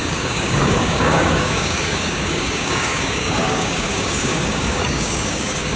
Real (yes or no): no